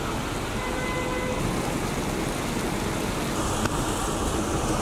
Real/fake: real